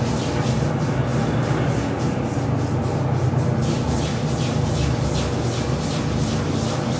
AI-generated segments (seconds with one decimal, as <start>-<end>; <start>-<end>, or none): none